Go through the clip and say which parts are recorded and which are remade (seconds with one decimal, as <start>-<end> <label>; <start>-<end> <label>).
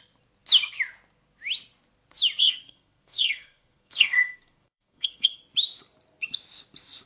0.0-2.4 recorded; 2.4-5.4 remade; 5.4-7.1 recorded